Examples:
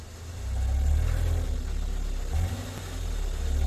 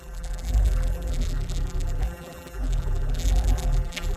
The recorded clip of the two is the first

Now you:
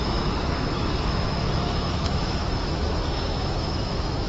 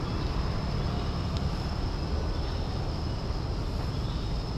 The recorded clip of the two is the second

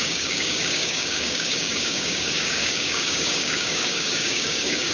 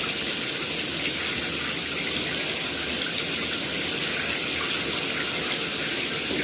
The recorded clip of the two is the second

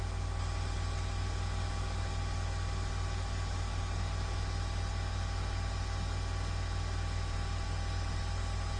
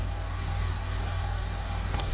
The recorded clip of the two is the first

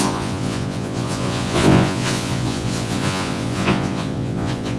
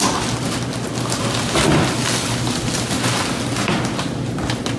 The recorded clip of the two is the second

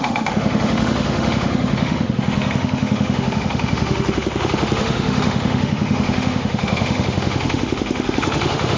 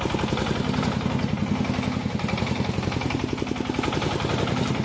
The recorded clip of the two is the second